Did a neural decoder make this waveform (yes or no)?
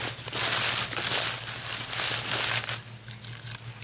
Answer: no